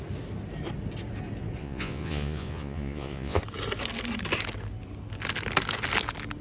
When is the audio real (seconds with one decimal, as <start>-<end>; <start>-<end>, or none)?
0.0-1.6; 3.4-6.4